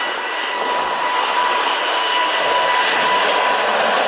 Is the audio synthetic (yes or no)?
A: yes